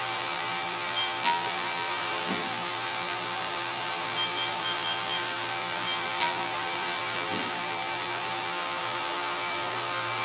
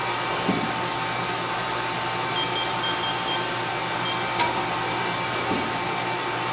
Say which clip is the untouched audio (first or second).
second